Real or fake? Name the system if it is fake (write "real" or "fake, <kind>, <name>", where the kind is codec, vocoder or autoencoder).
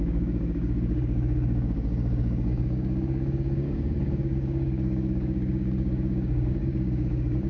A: fake, codec, DAC